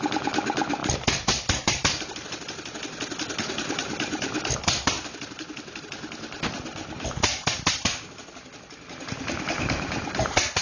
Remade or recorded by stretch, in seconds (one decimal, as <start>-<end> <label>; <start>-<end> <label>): 0.0-0.8 recorded; 0.8-5.8 remade; 5.8-6.8 recorded; 6.8-10.6 remade